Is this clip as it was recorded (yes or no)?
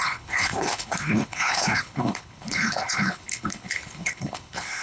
no